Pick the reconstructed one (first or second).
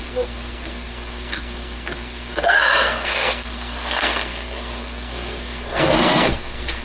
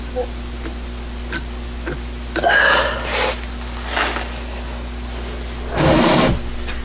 first